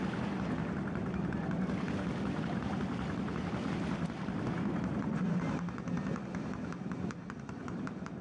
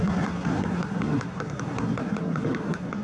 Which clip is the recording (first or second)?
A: first